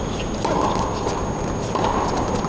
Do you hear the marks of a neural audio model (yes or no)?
no